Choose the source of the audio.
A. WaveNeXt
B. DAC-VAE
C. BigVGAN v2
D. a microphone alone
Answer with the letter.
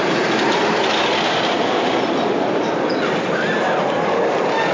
D